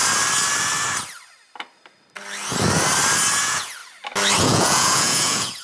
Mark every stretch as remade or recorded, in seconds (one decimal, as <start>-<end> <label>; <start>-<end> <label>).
0.0-3.4 recorded; 3.4-3.8 remade; 3.8-4.4 recorded; 4.4-5.6 remade